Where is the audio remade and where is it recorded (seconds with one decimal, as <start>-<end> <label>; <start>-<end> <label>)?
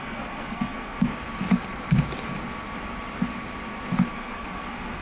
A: 0.0-1.1 remade; 1.1-4.1 recorded; 4.1-5.0 remade